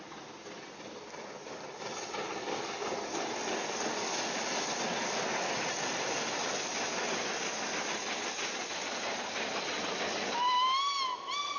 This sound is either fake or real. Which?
real